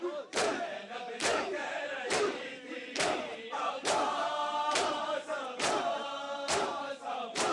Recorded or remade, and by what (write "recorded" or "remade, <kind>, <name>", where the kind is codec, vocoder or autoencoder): remade, vocoder, BigVGAN v2